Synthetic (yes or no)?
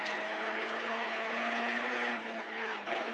yes